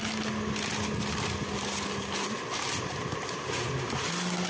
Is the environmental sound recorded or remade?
recorded